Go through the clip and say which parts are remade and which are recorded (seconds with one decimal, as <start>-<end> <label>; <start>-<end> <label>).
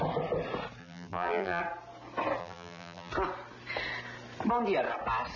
0.0-0.8 recorded; 0.8-1.6 remade; 1.6-2.4 recorded; 2.4-3.1 remade; 3.1-5.4 recorded